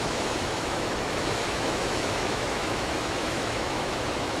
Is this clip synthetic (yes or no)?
yes